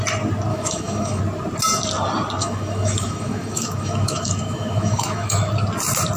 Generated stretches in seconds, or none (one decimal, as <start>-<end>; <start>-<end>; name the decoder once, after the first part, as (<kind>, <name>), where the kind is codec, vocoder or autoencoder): 0.5-1.2 (autoencoder, DAC-VAE); 2.4-5.5